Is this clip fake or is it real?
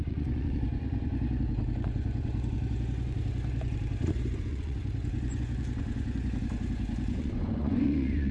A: fake